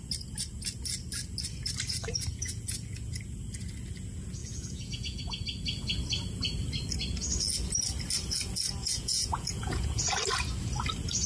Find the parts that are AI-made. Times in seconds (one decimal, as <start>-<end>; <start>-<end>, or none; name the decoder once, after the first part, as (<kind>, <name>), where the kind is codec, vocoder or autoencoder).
2.4-3.2 (vocoder, Vocos); 4.4-5.2; 8.8-10.0